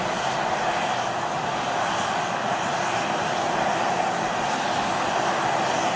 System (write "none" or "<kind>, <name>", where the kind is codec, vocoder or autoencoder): none